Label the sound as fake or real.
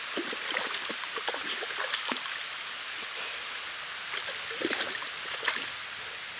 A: real